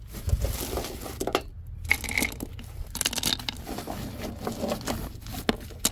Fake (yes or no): no